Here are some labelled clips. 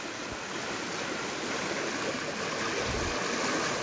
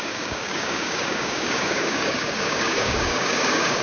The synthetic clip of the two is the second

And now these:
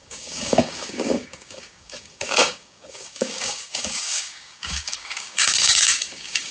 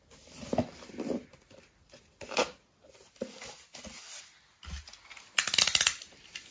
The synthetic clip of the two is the first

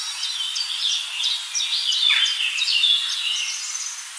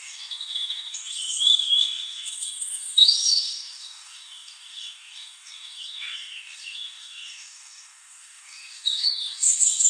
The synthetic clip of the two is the second